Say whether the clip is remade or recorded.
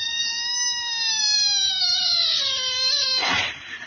recorded